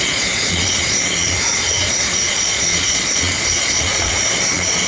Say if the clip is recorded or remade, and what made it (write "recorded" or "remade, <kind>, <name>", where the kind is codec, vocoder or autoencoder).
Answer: remade, vocoder, Vocos